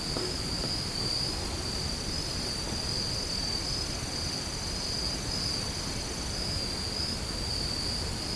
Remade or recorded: recorded